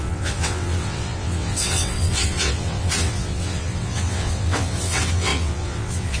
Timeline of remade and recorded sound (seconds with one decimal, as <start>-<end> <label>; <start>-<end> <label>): 0.0-6.2 remade